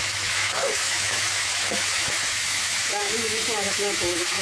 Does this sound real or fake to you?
fake